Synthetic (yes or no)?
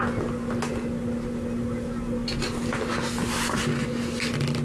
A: no